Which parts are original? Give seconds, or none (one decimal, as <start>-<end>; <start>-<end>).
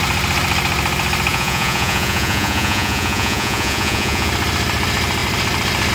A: 0.0-1.3; 4.3-5.9